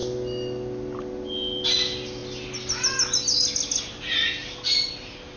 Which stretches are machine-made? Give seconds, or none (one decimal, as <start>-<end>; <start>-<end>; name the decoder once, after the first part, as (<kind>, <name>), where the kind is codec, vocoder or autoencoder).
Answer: none